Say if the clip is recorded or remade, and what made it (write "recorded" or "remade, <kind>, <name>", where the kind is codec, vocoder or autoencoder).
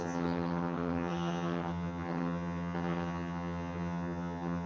remade, vocoder, HiFi-GAN